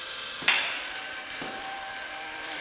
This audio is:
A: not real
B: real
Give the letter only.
A